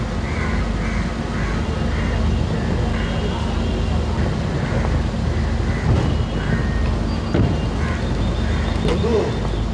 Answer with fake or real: real